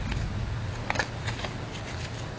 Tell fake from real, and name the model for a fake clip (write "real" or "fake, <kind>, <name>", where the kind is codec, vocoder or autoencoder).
real